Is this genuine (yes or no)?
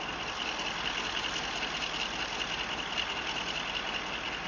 yes